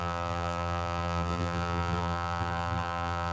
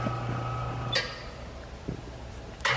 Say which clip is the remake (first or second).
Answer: first